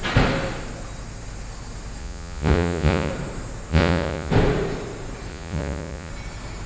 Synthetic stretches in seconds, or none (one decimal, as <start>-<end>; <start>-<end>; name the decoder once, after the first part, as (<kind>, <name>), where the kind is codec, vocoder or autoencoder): 2.0-3.1 (vocoder, Vocos); 3.7-4.3; 5.3-6.1